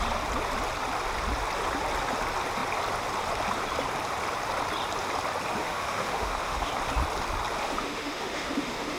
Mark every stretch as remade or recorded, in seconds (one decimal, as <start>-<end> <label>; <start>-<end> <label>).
0.0-5.6 recorded; 5.6-6.7 remade; 6.7-7.6 recorded; 7.6-9.0 remade